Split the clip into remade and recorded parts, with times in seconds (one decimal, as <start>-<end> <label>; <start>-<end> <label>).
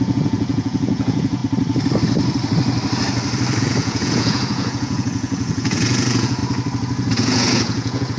0.0-1.4 remade; 1.4-3.6 recorded; 3.6-6.4 remade; 6.4-7.1 recorded; 7.1-8.2 remade